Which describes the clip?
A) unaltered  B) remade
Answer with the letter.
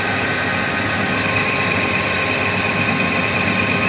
A